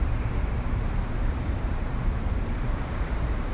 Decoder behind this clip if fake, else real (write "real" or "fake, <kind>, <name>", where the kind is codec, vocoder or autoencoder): fake, vocoder, BigVGAN v2